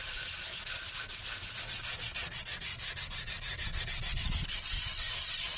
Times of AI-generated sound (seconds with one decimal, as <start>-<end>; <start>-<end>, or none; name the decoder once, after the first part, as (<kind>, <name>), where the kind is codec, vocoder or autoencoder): 2.7-5.6 (vocoder, WaveNeXt)